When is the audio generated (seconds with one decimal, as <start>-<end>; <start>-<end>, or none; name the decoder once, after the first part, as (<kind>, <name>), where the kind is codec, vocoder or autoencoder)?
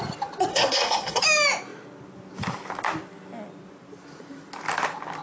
0.5-1.2 (codec, SNAC)